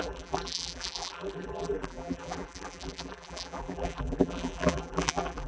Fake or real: fake